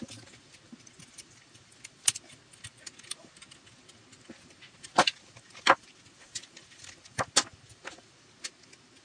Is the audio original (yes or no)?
yes